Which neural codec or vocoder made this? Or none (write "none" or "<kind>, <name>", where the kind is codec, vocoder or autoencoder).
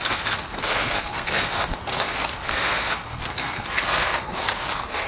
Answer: codec, SNAC